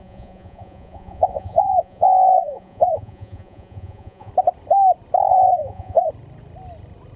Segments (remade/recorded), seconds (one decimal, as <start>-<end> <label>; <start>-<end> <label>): 0.0-4.3 remade; 4.3-5.3 recorded; 5.3-6.1 remade; 6.1-7.2 recorded